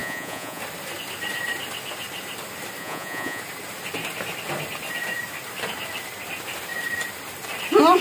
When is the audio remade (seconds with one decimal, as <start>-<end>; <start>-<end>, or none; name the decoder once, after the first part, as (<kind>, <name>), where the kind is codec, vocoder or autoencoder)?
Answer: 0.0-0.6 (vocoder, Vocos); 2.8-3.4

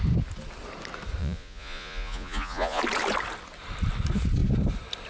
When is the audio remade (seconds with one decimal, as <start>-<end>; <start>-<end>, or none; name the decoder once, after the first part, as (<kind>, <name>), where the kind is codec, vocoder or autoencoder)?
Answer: 1.2-2.8 (vocoder, Vocos)

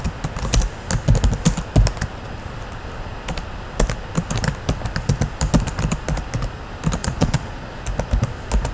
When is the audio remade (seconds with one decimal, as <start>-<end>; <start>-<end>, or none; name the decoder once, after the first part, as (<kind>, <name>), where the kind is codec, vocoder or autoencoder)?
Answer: 7.0-7.8 (vocoder, Vocos)

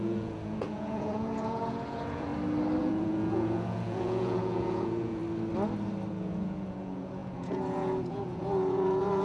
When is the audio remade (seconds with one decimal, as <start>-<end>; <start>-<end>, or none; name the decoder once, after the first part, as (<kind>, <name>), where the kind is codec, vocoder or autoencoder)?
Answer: 0.0-2.3 (vocoder, Vocos); 2.8-5.2; 6.1-9.2

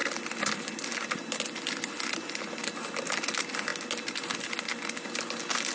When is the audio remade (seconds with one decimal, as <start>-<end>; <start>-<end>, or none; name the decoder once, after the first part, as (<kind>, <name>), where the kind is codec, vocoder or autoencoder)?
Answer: none